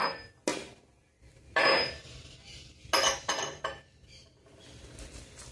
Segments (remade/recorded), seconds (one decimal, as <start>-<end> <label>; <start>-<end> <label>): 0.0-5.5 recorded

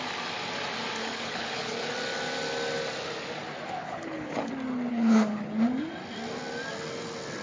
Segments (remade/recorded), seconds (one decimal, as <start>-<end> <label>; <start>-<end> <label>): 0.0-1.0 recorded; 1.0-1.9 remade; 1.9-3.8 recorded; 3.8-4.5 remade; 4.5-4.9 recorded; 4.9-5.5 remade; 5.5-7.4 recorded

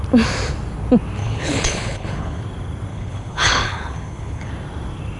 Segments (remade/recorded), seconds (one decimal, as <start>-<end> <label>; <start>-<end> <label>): 0.0-1.2 recorded; 1.2-2.4 remade; 2.4-2.9 recorded; 2.9-4.5 remade; 4.5-5.2 recorded

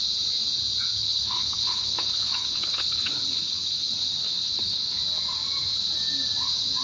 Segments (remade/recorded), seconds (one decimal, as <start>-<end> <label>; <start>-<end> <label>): 0.0-1.0 recorded; 1.0-5.0 remade; 5.0-6.8 recorded

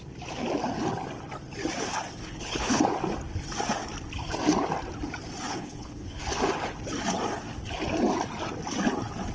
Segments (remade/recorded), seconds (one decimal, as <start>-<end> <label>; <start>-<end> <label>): 0.0-2.2 recorded; 2.2-2.8 remade; 2.8-5.5 recorded; 5.5-6.2 remade; 6.2-9.3 recorded